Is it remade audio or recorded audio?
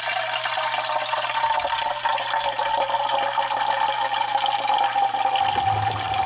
recorded